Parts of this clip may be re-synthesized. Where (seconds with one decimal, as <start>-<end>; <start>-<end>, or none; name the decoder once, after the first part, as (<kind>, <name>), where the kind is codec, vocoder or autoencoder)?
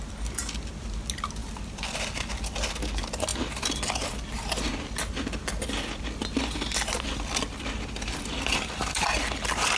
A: 1.4-2.3 (vocoder, BigVGAN v2)